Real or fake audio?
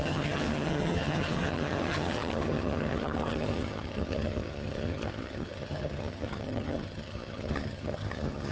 fake